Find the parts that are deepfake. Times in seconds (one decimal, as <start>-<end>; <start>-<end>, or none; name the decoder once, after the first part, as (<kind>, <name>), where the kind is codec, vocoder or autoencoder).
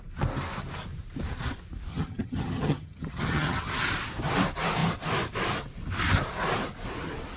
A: 1.9-3.7 (vocoder, HiFi-GAN)